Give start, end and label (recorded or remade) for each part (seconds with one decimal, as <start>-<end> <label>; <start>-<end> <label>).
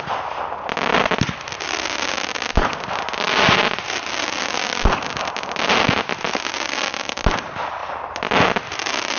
0.0-9.2 recorded